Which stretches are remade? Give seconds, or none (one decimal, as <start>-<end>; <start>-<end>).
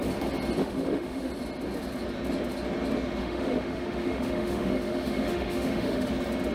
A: 0.6-1.3; 3.2-6.1